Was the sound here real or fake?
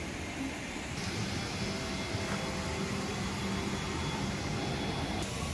real